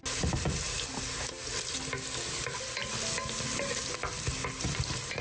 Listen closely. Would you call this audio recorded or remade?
recorded